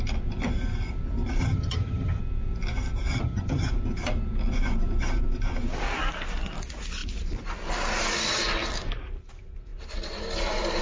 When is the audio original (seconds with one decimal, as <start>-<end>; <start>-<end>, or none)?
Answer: 0.0-1.4; 2.2-3.1; 3.7-10.8